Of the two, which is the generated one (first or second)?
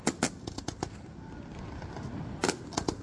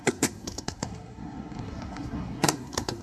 second